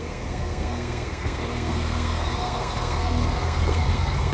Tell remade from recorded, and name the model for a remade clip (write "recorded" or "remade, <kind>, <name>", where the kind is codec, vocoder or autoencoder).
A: remade, codec, SNAC